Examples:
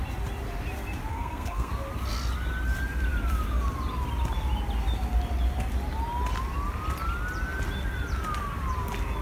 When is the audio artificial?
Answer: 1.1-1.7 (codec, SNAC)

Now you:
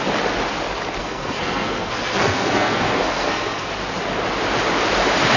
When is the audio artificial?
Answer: 1.0-3.7 (codec, SNAC)

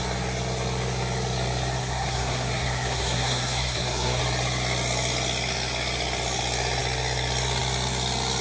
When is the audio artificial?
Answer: 1.8-4.2 (codec, SNAC)

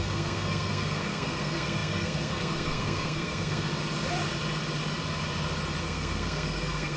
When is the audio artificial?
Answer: 0.0-3.7 (codec, SNAC); 5.8-7.0

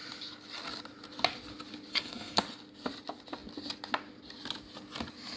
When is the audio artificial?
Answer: 1.9-2.4 (codec, SNAC)

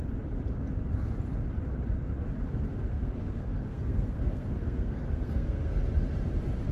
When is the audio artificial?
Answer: 2.9-5.8 (codec, SNAC)